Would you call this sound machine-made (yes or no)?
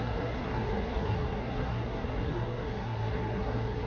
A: yes